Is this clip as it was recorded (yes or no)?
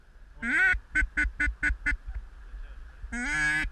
yes